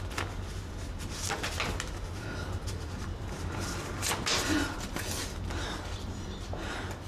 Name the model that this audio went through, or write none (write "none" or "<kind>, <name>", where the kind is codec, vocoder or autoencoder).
none